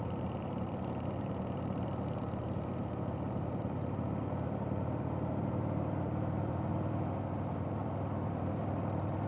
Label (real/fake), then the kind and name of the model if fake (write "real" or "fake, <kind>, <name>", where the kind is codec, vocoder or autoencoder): fake, vocoder, BigVGAN v2